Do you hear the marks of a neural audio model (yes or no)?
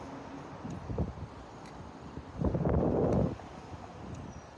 no